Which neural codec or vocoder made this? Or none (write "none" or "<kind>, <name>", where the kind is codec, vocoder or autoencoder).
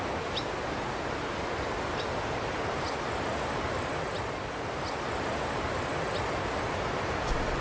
none